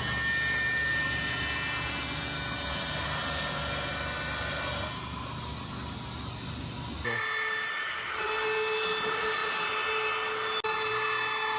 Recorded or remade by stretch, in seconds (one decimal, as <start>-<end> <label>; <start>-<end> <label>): 0.0-11.6 recorded